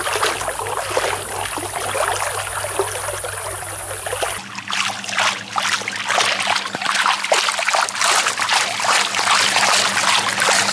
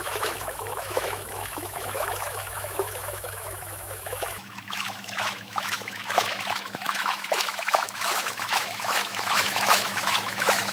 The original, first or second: first